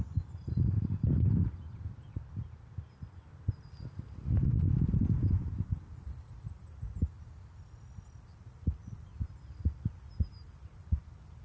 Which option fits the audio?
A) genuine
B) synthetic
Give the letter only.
B